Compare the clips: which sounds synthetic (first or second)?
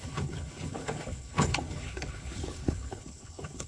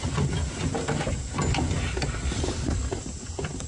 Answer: first